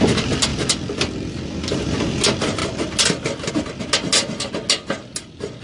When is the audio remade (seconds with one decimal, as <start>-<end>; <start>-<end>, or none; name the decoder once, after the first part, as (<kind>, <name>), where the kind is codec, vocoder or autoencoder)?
none